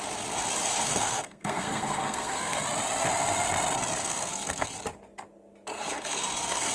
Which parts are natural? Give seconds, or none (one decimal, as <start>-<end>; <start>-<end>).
0.0-0.6; 2.6-4.0; 4.7-5.7